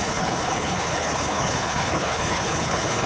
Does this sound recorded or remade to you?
remade